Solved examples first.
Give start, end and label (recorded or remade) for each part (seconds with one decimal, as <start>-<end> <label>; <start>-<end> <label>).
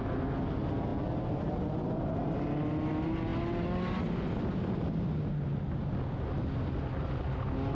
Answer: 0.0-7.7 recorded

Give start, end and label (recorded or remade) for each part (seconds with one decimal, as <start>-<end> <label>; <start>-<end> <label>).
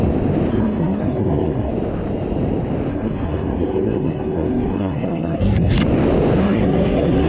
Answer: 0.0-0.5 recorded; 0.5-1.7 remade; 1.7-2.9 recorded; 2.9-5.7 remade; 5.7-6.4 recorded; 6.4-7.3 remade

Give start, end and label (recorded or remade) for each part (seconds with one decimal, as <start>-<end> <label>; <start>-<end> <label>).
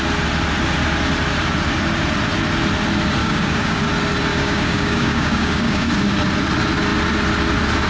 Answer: 0.0-3.2 recorded; 3.2-3.8 remade; 3.8-4.3 recorded; 4.3-5.9 remade; 5.9-7.9 recorded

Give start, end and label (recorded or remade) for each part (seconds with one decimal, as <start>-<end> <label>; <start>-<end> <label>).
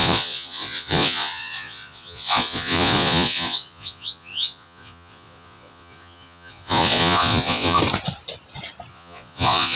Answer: 0.0-7.8 remade; 7.8-8.9 recorded; 8.9-9.8 remade